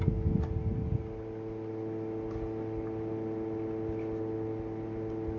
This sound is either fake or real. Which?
real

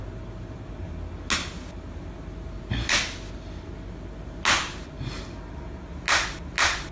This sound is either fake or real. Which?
real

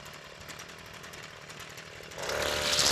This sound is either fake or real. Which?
real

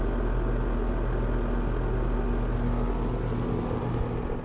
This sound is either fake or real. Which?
real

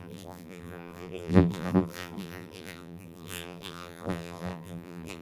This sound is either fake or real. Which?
fake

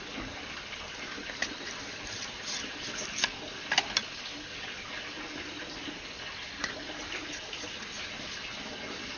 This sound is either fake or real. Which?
real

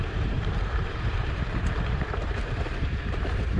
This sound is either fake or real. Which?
fake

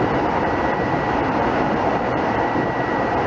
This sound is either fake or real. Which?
fake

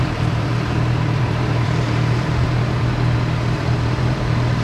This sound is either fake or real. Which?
fake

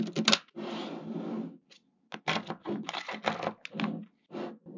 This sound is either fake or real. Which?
real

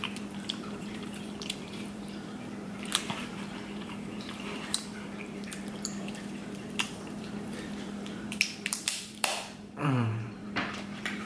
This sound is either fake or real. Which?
fake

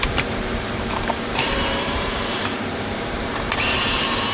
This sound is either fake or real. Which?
fake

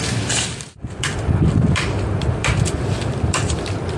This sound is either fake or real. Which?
fake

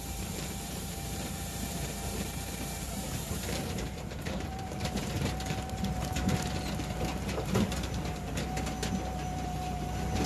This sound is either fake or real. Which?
fake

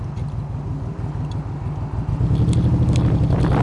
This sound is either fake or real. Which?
real